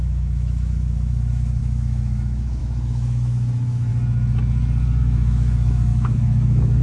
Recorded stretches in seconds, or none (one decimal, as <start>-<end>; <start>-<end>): 3.9-5.0